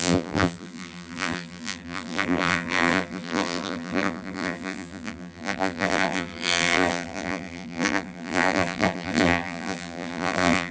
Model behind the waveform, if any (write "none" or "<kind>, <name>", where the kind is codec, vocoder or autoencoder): vocoder, BigVGAN v2